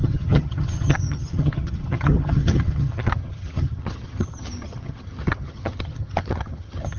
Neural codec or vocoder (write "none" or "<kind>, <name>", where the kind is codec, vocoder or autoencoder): vocoder, HiFi-GAN